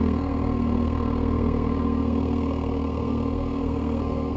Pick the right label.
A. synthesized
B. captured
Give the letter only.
A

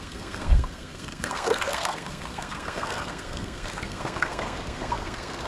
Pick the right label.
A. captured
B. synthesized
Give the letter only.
B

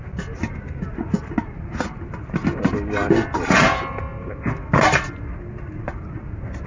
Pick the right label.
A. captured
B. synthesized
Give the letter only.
A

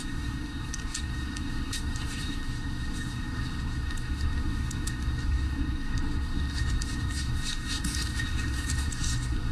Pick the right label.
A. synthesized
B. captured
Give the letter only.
A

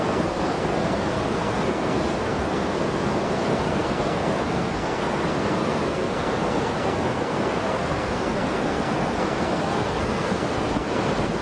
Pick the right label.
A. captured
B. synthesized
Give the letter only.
B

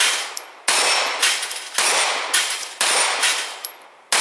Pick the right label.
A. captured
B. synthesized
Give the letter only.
A